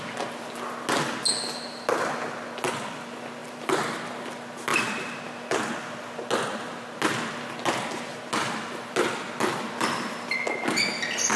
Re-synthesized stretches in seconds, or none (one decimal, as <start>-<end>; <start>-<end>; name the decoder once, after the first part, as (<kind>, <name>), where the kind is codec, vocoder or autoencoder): 3.4-4.1 (vocoder, BigVGAN v2)